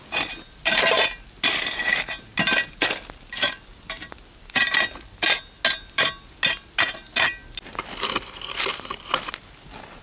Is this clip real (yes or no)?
yes